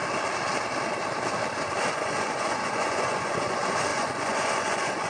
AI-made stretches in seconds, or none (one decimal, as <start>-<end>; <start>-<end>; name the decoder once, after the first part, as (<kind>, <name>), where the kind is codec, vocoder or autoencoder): 1.9-5.1 (vocoder, Vocos)